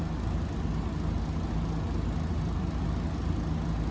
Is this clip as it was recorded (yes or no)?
yes